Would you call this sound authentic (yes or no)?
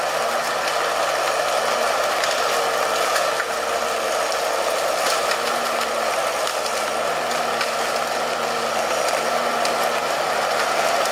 yes